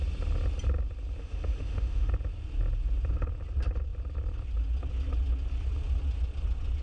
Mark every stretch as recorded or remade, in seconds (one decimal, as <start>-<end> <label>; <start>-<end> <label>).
0.0-1.2 recorded; 1.2-2.1 remade; 2.1-6.8 recorded